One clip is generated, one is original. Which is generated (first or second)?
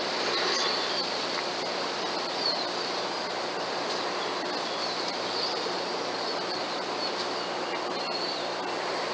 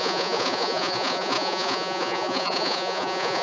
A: second